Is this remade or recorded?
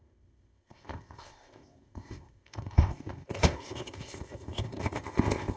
remade